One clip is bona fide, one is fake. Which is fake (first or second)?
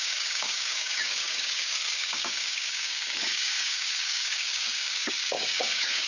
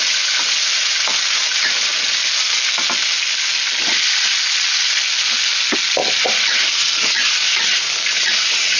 first